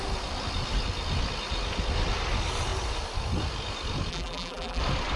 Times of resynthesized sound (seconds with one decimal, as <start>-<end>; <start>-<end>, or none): 4.1-4.8